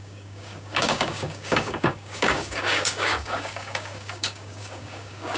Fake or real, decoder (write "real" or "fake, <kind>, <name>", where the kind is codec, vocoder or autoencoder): fake, codec, DAC